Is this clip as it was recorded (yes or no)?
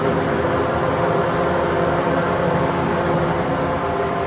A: yes